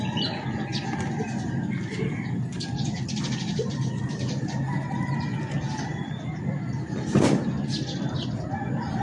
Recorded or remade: remade